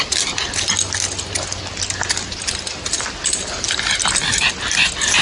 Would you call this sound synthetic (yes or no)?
no